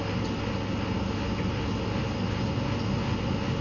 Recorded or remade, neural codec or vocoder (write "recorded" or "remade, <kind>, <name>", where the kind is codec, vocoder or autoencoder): recorded